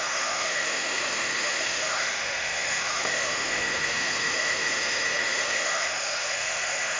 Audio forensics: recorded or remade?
remade